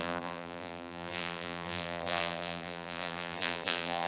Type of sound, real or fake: fake